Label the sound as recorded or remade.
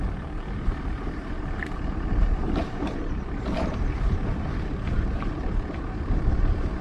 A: remade